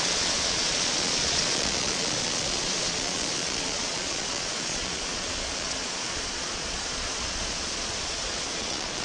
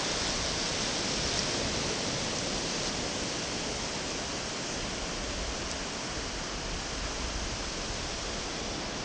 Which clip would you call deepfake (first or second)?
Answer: first